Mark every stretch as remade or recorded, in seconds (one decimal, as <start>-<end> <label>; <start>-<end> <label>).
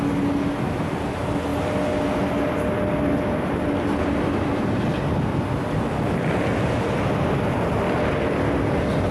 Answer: 0.0-9.1 recorded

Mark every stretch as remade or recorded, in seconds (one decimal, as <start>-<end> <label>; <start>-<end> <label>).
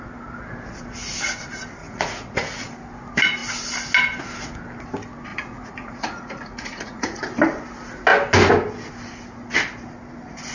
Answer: 0.0-1.8 recorded; 1.8-2.7 remade; 2.7-5.3 recorded; 5.3-7.2 remade; 7.2-10.5 recorded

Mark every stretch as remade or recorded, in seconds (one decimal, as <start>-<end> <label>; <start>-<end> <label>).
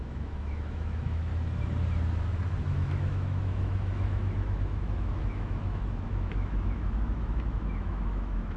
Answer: 0.0-1.3 remade; 1.3-2.6 recorded; 2.6-8.6 remade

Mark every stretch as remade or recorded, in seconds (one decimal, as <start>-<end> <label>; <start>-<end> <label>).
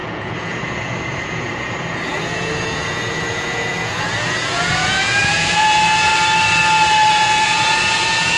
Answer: 0.0-6.1 remade; 6.1-7.1 recorded; 7.1-8.4 remade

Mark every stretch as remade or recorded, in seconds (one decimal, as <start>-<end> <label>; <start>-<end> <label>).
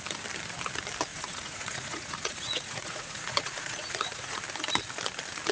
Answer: 0.0-1.1 recorded; 1.1-4.4 remade; 4.4-5.5 recorded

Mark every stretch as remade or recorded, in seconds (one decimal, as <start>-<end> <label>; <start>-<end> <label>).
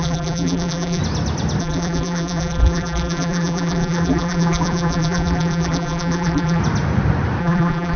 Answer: 0.0-1.0 remade; 1.0-1.6 recorded; 1.6-6.6 remade; 6.6-7.4 recorded; 7.4-8.0 remade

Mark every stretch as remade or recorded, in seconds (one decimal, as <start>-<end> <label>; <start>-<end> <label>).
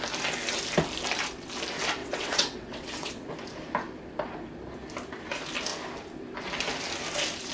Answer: 0.0-2.0 recorded; 2.0-3.3 remade; 3.3-7.5 recorded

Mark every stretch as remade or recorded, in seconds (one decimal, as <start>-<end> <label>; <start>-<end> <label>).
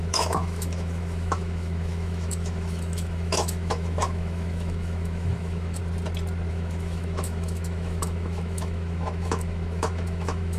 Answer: 0.0-5.8 remade; 5.8-6.5 recorded; 6.5-10.6 remade